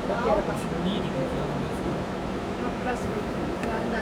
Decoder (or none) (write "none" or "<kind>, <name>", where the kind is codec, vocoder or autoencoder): autoencoder, DAC-VAE